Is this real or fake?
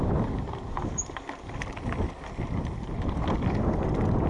real